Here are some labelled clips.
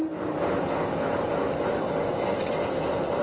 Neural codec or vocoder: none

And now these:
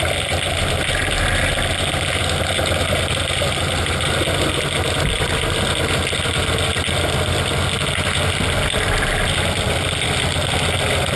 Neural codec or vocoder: none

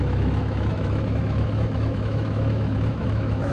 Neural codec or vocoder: autoencoder, DAC-VAE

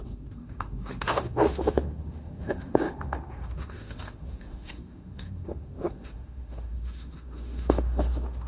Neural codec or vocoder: autoencoder, DAC-VAE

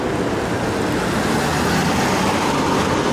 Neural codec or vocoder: none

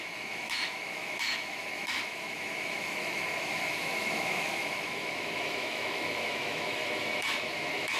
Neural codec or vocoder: autoencoder, DAC-VAE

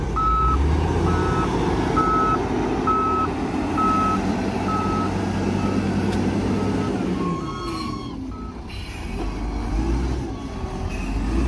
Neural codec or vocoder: none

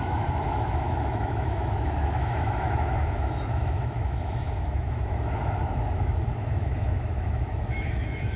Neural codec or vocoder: autoencoder, DAC-VAE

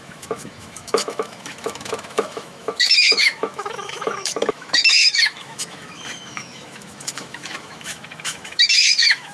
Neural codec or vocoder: autoencoder, DAC-VAE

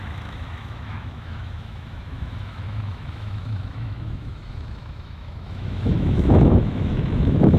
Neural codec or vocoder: autoencoder, DAC-VAE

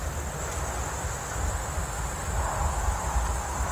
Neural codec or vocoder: none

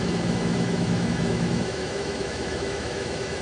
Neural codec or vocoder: autoencoder, DAC-VAE